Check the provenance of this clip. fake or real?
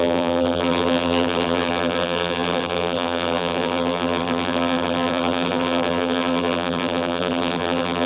fake